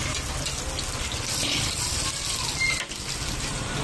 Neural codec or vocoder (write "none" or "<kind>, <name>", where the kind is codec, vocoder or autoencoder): none